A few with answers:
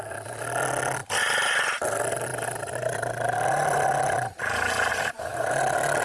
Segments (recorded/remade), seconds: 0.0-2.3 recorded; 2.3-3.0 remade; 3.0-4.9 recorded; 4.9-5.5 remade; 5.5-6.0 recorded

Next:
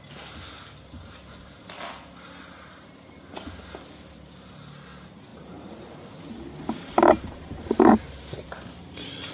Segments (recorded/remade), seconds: 0.0-5.3 recorded; 5.3-8.4 remade; 8.4-9.3 recorded

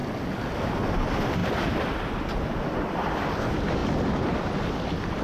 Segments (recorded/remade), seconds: 0.0-1.4 recorded; 1.4-2.3 remade; 2.3-3.8 recorded; 3.8-4.4 remade; 4.4-5.2 recorded

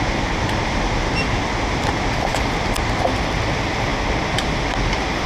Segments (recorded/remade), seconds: 0.0-5.3 recorded

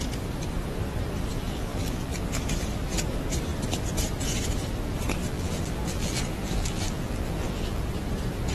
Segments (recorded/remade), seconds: 0.0-1.3 recorded; 1.3-2.2 remade; 2.2-5.2 recorded; 5.2-7.8 remade; 7.8-8.5 recorded

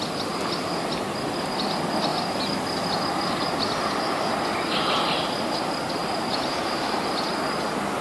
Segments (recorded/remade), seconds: 0.0-6.0 recorded; 6.0-7.0 remade; 7.0-8.0 recorded

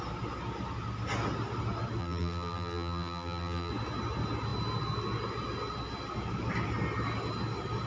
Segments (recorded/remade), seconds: 0.0-2.0 recorded; 2.0-3.7 remade; 3.7-7.9 recorded

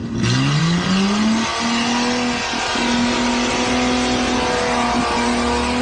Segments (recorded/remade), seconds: 0.0-5.8 recorded